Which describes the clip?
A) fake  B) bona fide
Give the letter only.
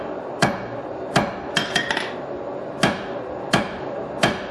B